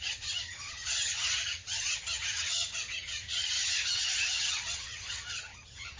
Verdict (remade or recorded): remade